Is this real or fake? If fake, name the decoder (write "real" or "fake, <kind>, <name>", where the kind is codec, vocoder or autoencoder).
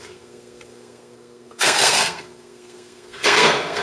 fake, codec, SNAC